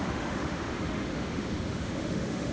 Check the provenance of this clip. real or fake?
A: fake